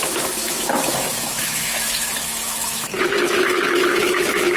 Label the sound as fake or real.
fake